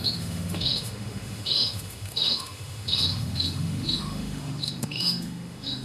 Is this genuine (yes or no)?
no